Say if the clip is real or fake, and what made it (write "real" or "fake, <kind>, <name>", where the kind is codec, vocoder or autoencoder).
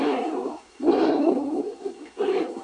fake, codec, SNAC